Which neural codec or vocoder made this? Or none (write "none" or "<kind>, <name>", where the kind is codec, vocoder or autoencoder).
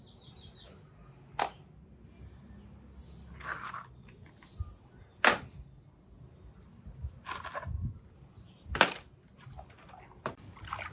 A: none